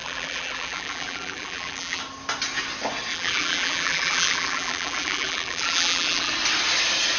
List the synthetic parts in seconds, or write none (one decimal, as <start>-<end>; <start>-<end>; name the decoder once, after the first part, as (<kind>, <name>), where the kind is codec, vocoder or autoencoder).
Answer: 0.0-2.0 (vocoder, BigVGAN v2); 3.1-6.3